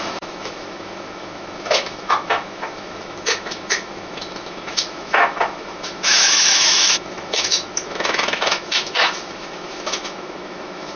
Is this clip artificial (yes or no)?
yes